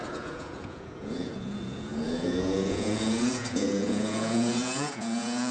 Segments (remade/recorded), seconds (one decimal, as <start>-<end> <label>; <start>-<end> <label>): 0.0-5.5 remade

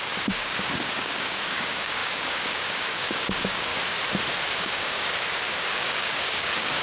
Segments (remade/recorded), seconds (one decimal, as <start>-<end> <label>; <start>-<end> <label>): 0.0-3.7 remade; 3.7-4.5 recorded; 4.5-6.8 remade

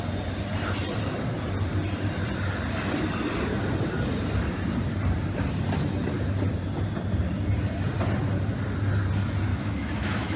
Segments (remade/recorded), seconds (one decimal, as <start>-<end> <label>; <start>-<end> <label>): 0.0-9.5 recorded; 9.5-10.4 remade